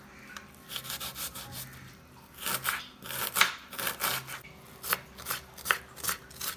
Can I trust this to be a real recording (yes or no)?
yes